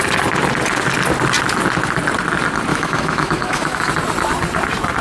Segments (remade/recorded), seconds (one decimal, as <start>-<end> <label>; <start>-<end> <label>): 0.0-2.7 recorded; 2.7-3.9 remade; 3.9-5.0 recorded

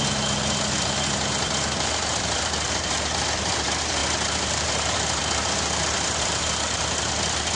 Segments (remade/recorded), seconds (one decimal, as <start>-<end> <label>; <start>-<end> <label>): 0.0-4.0 remade; 4.0-4.5 recorded; 4.5-7.5 remade

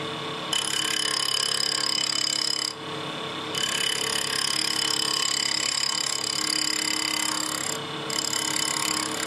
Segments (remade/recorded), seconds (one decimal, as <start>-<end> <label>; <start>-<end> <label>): 0.0-9.3 recorded